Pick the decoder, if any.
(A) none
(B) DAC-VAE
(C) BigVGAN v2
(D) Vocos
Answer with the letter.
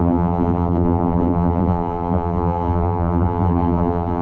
C